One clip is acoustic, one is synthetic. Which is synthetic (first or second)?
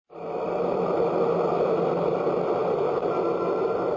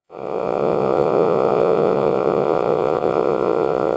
second